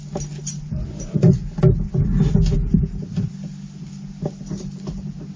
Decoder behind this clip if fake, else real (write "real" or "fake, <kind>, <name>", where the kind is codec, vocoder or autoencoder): real